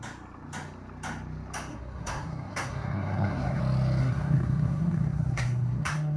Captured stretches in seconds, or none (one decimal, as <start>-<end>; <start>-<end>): 0.0-1.7; 3.6-4.0